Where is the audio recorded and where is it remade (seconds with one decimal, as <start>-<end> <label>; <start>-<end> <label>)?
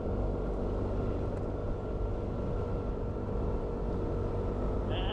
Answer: 0.0-5.1 recorded